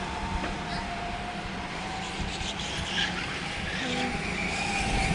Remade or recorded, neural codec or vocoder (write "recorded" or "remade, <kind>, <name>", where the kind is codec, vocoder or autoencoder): recorded